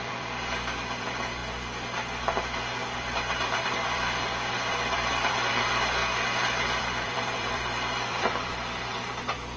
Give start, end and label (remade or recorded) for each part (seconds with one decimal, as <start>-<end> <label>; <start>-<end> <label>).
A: 0.0-1.4 remade; 1.4-3.0 recorded; 3.0-6.0 remade; 6.0-6.8 recorded; 6.8-9.6 remade